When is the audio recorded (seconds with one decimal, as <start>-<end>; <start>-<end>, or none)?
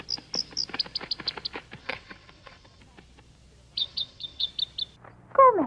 0.0-1.8; 2.8-3.8; 4.5-5.7